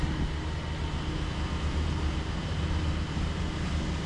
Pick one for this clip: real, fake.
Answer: real